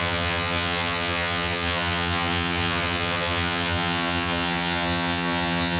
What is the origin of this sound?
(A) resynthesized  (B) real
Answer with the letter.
A